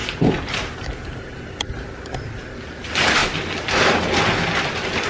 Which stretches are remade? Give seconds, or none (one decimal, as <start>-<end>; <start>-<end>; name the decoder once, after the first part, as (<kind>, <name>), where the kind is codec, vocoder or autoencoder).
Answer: 0.0-2.4 (vocoder, BigVGAN v2); 3.2-3.8